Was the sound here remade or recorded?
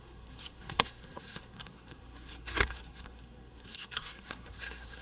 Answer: remade